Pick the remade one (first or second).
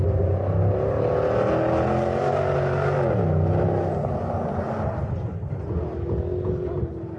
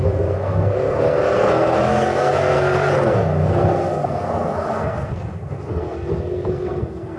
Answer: second